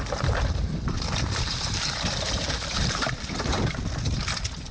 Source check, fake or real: fake